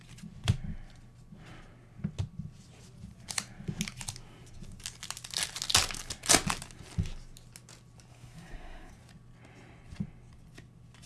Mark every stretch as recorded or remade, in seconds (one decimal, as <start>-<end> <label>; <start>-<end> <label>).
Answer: 0.0-8.1 recorded; 8.1-8.9 remade; 8.9-11.1 recorded